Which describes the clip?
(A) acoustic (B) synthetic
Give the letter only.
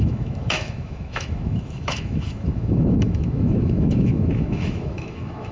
B